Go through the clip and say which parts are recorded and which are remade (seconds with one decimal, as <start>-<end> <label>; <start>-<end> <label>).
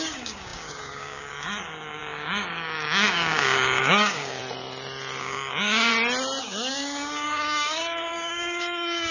0.0-4.4 remade; 4.4-5.2 recorded; 5.2-5.9 remade; 5.9-6.4 recorded; 6.4-9.1 remade